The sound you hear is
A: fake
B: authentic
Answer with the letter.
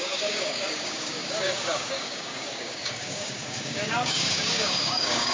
A